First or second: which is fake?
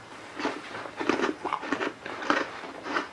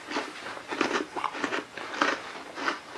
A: first